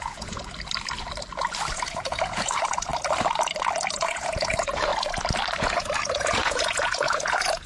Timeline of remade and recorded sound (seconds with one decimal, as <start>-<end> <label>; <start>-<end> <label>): 0.0-0.4 remade; 0.4-1.7 recorded; 1.7-2.9 remade; 2.9-3.9 recorded; 3.9-4.9 remade; 4.9-5.6 recorded; 5.6-7.7 remade